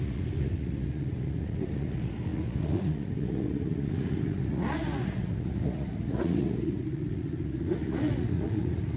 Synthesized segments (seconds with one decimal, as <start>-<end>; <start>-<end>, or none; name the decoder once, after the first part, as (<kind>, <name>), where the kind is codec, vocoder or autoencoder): 0.0-9.0 (vocoder, Vocos)